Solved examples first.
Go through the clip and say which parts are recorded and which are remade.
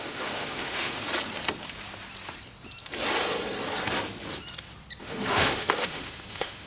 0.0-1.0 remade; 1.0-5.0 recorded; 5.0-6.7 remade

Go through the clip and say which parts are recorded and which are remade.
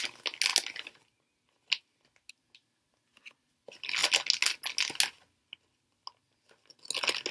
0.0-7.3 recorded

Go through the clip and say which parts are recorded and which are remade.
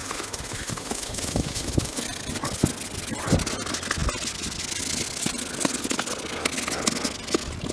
0.0-2.0 remade; 2.0-7.7 recorded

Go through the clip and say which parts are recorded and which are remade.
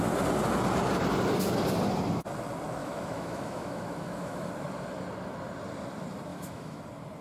0.0-2.8 recorded; 2.8-4.5 remade; 4.5-6.3 recorded; 6.3-6.8 remade; 6.8-7.2 recorded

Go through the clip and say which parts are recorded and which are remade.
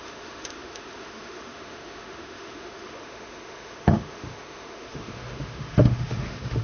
0.0-6.6 remade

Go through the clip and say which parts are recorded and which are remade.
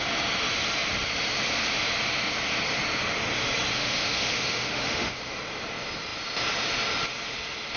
0.0-3.8 recorded; 3.8-5.2 remade; 5.2-7.8 recorded